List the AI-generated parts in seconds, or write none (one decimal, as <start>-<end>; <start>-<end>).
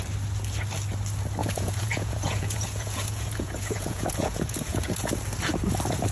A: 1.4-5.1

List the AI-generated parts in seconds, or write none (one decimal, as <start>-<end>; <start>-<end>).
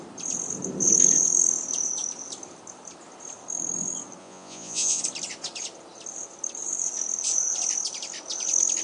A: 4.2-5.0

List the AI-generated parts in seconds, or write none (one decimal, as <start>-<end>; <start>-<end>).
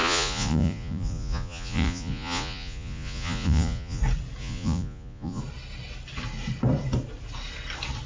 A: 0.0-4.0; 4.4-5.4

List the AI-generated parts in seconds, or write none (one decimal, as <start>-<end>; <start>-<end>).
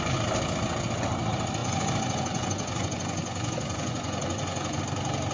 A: 1.6-4.8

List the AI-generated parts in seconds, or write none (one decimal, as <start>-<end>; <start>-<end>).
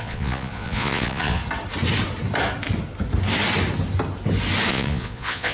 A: 0.0-1.4; 4.7-5.5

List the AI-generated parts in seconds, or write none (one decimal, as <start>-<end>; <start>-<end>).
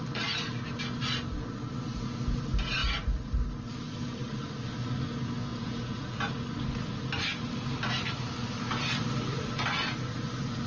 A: 5.5-6.3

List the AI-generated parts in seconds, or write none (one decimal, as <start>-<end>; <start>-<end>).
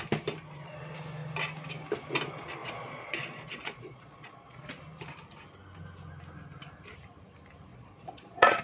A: 2.6-4.7; 7.7-8.6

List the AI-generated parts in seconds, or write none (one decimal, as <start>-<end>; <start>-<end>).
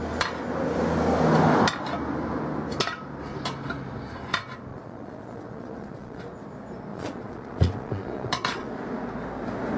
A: 4.7-6.2; 6.9-8.7